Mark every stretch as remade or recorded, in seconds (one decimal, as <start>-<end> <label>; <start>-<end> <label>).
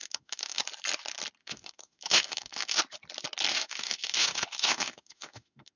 0.0-0.6 remade; 0.6-1.4 recorded; 1.4-2.8 remade; 2.8-3.5 recorded; 3.5-5.8 remade